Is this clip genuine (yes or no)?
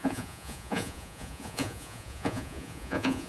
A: no